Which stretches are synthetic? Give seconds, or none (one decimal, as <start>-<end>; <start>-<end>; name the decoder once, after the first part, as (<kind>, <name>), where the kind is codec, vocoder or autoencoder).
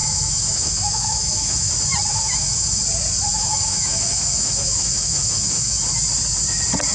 0.0-1.7 (autoencoder, DAC-VAE); 2.1-2.8; 3.3-5.8